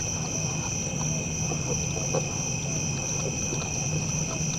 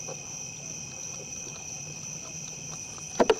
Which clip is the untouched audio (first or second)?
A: first